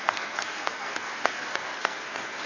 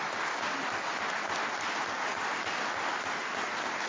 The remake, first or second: first